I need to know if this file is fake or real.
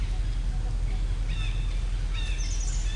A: real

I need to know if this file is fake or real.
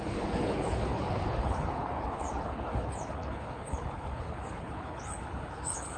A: fake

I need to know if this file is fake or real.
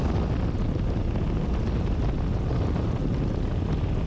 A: real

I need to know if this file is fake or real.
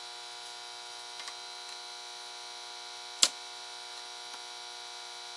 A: real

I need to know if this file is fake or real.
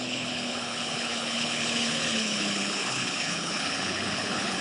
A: fake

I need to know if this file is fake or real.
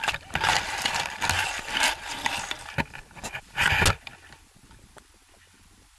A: real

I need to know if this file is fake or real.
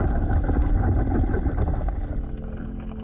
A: real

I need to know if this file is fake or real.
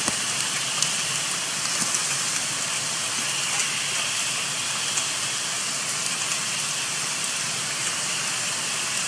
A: real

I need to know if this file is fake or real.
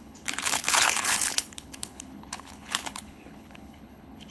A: fake